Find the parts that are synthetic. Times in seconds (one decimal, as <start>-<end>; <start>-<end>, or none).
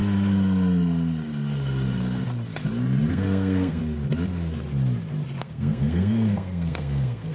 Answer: 3.1-3.8; 5.4-7.3